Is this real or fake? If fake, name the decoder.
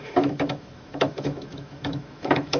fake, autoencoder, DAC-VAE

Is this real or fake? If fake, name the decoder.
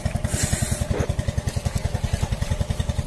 real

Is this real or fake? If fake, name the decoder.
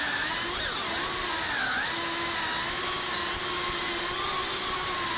real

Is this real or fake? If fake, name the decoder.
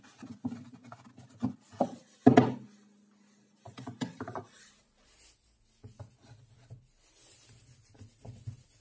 real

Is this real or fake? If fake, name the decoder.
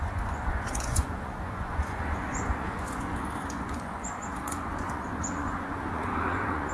fake, vocoder, Vocos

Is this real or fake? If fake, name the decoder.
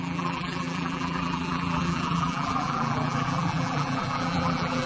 fake, vocoder, BigVGAN v2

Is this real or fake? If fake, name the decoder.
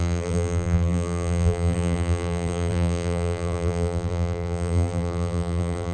fake, vocoder, BigVGAN v2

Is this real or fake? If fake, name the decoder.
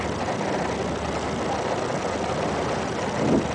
real